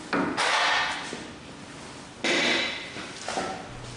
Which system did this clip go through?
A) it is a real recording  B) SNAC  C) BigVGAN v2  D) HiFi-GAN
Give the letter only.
A